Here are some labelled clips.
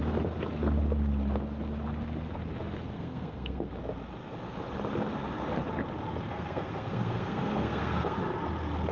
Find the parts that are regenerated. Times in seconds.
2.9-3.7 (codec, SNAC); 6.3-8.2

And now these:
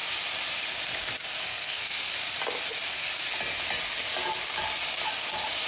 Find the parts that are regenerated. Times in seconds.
1.4-2.1 (codec, SNAC)

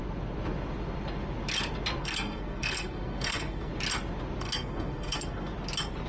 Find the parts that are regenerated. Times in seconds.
2.0-3.7 (codec, SNAC); 4.4-5.5

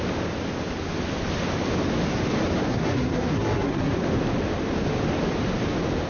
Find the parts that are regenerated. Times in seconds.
2.7-3.9 (codec, SNAC)

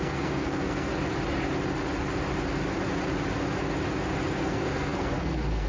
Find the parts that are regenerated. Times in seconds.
0.0-0.9 (codec, SNAC); 4.3-5.7

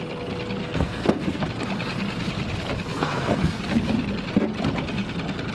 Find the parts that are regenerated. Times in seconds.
0.6-1.4 (codec, SNAC); 2.9-3.6